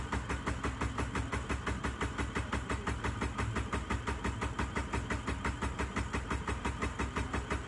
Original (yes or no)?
yes